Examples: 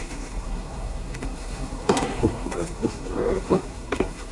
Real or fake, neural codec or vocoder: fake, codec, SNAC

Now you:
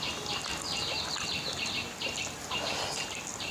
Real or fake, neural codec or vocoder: real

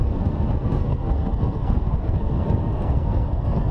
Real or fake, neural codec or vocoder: fake, codec, SNAC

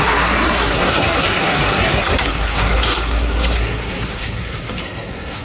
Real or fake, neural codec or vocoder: fake, codec, SNAC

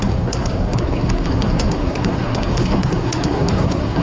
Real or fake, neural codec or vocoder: fake, codec, SNAC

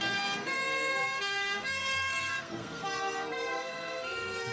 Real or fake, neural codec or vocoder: fake, codec, SNAC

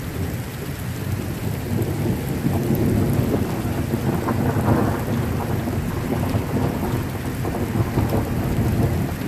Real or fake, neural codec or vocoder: real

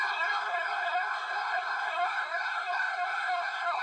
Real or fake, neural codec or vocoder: fake, codec, SNAC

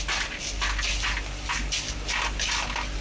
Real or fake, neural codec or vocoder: real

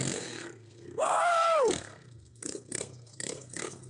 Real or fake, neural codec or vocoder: fake, codec, SNAC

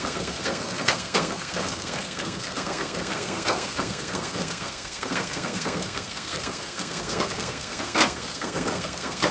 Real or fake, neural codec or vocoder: fake, codec, SNAC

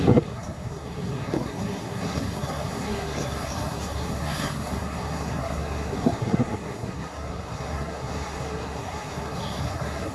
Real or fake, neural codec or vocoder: fake, codec, SNAC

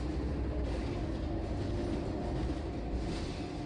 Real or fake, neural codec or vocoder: real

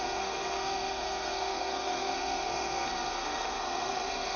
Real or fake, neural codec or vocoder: fake, codec, SNAC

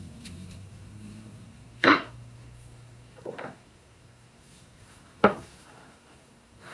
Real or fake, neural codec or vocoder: fake, codec, SNAC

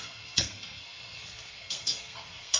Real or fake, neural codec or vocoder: fake, codec, SNAC